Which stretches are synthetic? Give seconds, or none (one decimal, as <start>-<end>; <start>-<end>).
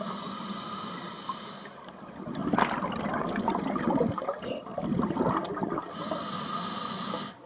none